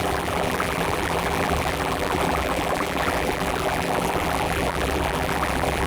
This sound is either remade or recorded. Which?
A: remade